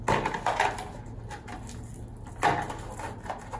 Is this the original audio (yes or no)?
yes